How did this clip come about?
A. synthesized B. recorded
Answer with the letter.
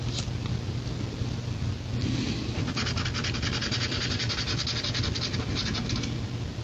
B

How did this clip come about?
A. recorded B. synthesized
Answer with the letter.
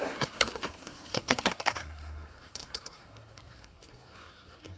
B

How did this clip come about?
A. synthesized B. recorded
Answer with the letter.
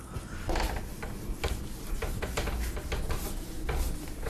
B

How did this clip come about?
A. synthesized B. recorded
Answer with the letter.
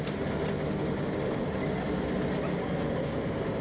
B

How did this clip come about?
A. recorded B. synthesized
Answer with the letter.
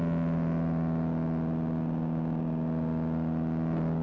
A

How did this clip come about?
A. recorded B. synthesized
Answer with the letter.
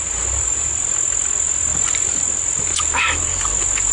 B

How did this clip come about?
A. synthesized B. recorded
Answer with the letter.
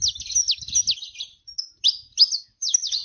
B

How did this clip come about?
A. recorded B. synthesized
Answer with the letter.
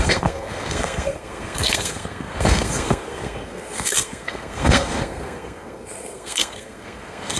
B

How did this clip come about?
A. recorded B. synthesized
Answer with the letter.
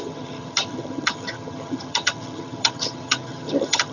B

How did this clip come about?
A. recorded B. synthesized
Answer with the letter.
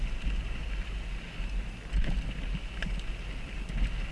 A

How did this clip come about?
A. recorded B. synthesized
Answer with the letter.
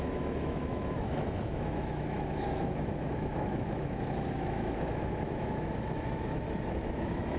B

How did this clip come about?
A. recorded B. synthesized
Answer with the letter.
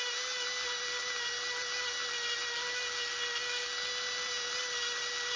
A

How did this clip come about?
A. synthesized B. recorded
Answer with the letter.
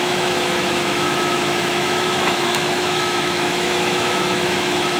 A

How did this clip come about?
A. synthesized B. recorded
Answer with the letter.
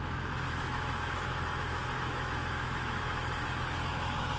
A